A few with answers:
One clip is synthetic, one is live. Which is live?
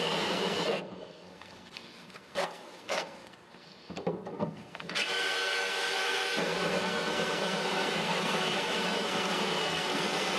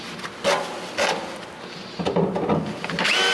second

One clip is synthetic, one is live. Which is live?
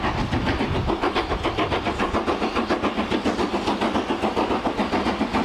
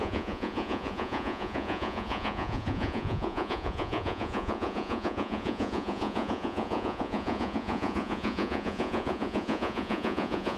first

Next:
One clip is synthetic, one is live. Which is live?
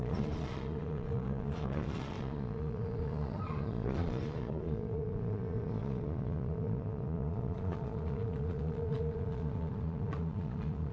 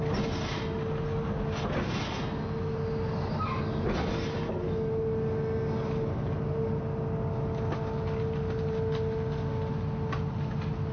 second